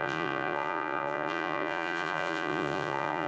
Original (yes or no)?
no